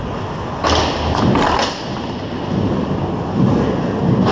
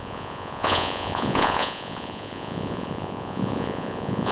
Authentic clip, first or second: first